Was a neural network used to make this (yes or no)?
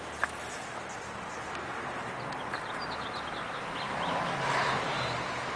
no